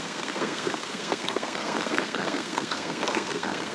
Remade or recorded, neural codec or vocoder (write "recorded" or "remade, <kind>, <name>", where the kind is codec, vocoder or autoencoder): remade, codec, SNAC